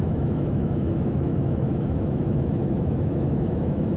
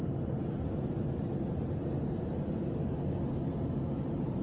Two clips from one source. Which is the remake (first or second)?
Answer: first